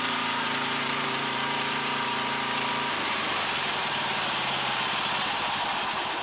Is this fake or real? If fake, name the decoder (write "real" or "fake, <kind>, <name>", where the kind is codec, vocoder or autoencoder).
fake, vocoder, BigVGAN v2